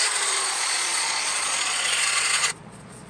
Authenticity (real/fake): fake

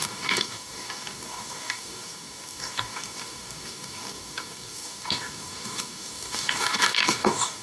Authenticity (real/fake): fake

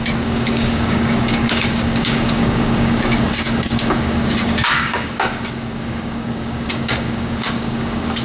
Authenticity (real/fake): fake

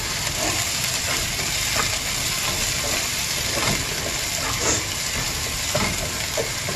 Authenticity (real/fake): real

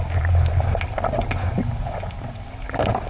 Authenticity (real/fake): real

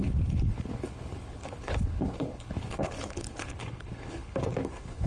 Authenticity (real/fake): fake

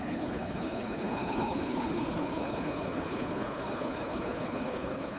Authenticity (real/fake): fake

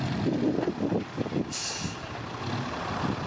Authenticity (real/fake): real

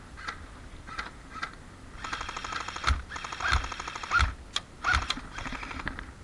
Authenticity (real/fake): real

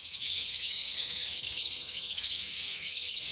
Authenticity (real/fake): fake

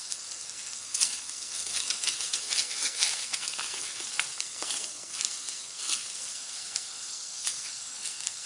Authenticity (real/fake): fake